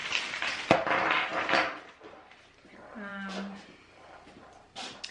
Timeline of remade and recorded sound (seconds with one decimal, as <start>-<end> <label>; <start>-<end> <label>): 0.0-5.1 recorded